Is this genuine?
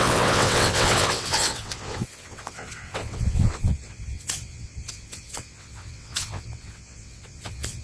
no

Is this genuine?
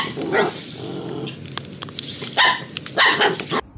yes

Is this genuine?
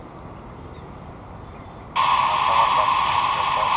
yes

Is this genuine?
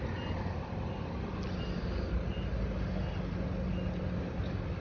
yes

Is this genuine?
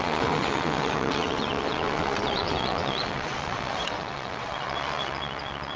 no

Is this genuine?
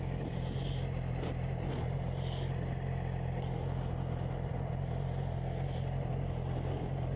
yes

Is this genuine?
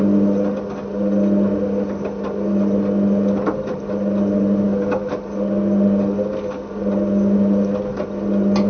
yes